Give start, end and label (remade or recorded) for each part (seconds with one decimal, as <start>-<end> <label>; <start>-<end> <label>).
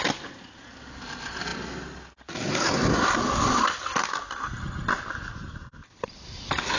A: 0.0-6.8 recorded